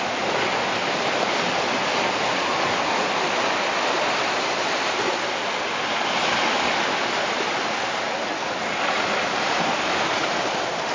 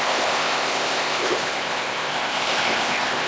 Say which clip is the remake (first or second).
second